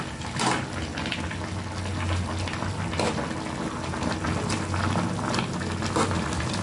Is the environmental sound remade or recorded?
recorded